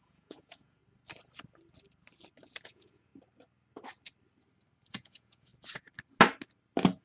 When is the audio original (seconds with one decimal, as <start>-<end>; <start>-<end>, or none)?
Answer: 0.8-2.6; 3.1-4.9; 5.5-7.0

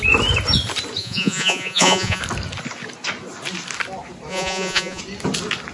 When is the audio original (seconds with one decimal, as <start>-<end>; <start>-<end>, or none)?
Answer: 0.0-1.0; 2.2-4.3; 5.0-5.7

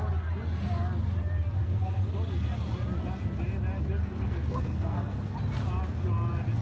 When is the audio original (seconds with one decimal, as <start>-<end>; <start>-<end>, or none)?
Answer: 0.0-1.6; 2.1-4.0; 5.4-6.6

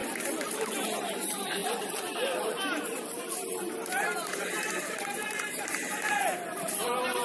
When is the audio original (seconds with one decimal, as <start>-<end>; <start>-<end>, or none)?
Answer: none

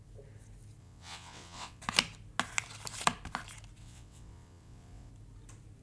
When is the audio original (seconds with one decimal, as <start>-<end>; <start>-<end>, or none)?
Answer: 0.0-0.8; 1.8-3.8; 5.1-5.8

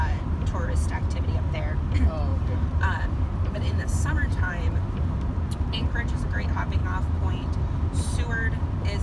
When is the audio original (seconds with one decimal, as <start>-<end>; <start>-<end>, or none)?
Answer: 0.0-2.3; 5.7-9.0